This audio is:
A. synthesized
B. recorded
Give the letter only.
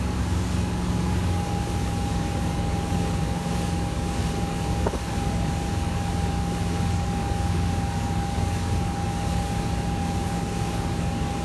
A